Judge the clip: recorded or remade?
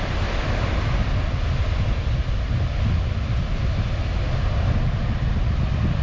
recorded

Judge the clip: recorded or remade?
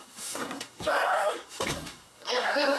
remade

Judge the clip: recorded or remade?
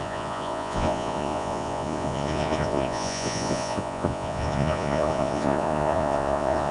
remade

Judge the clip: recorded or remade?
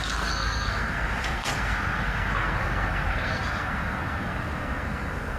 remade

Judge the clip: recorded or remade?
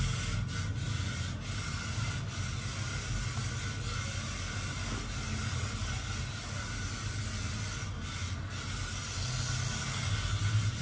recorded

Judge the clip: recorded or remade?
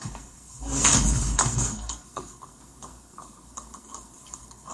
remade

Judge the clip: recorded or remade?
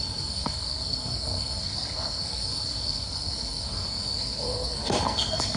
remade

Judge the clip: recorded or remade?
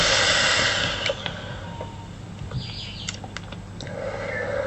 recorded